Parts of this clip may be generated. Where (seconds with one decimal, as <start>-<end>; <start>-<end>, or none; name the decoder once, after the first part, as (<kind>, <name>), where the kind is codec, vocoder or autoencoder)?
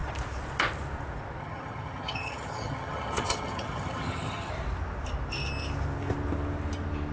1.4-4.5 (vocoder, HiFi-GAN)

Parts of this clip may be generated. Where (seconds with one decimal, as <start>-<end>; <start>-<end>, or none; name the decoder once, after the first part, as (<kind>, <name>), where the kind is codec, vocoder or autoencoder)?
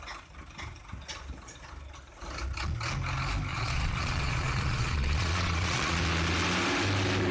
3.5-6.0 (vocoder, Vocos)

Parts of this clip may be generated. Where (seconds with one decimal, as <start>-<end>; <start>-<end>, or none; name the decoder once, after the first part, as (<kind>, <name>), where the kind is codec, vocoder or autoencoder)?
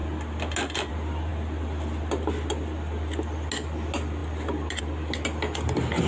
none